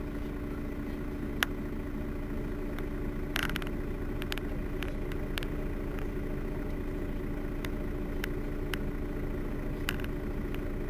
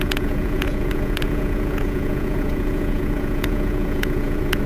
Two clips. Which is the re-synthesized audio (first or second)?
second